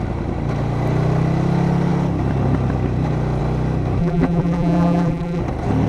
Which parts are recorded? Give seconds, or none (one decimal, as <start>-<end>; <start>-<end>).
0.0-4.0; 5.4-5.9